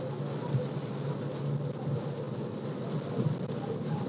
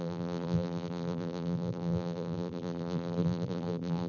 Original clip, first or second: first